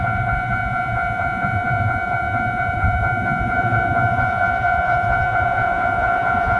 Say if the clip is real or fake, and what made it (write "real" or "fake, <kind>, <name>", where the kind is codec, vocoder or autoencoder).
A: fake, vocoder, Vocos